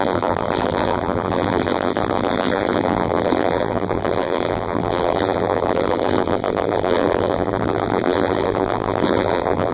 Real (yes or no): no